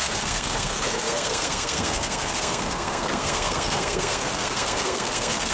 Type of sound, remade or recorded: remade